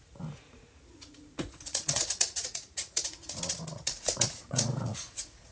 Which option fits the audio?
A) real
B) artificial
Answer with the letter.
B